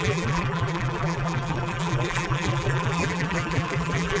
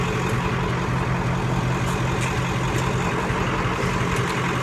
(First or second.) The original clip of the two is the second